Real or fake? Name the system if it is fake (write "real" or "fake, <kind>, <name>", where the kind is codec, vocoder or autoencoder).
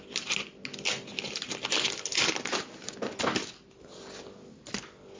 real